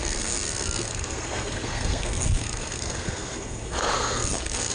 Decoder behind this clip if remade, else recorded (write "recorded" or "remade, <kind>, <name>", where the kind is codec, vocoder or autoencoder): remade, codec, SNAC